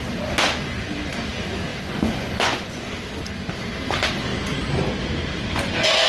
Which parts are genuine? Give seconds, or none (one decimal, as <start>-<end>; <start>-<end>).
0.0-1.7; 2.8-6.1